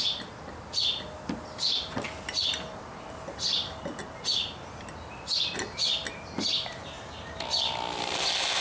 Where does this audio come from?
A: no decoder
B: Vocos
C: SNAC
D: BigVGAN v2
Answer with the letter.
A